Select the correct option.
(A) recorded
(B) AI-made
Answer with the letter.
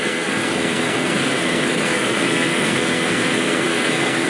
B